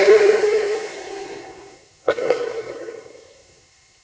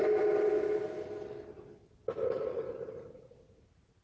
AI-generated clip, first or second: first